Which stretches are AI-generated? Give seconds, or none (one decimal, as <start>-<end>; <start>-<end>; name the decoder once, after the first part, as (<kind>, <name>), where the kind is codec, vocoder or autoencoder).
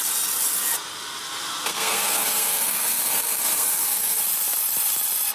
1.7-4.2 (codec, SNAC)